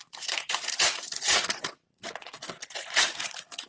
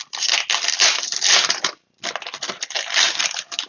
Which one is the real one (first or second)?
second